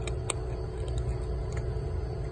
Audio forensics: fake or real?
real